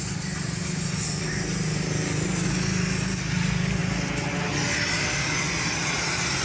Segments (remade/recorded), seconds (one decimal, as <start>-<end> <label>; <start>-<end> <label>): 0.0-6.4 recorded

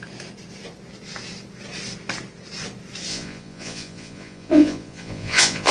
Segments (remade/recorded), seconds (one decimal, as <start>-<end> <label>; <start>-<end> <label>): 0.0-3.1 recorded; 3.1-5.7 remade

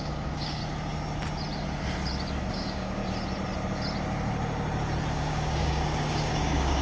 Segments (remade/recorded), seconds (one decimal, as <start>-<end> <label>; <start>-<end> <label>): 0.0-0.6 remade; 0.6-2.5 recorded; 2.5-3.0 remade; 3.0-5.1 recorded; 5.1-6.8 remade

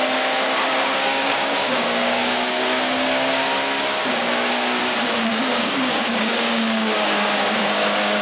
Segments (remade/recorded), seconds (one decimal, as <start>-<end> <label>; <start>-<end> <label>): 0.0-3.4 remade; 3.4-4.0 recorded; 4.0-4.8 remade; 4.8-5.3 recorded; 5.3-8.2 remade